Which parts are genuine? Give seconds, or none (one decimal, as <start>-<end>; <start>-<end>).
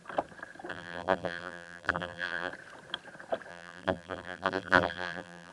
0.0-0.7; 2.5-3.5